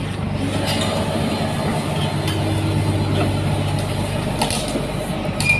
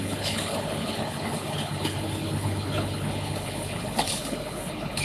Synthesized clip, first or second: second